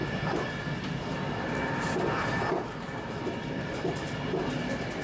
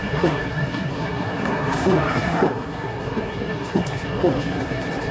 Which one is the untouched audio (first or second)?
first